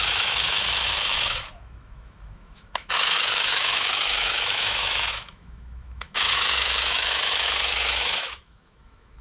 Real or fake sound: fake